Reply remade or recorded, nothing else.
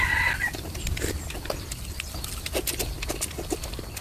recorded